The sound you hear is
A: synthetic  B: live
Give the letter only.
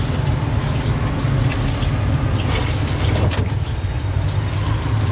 B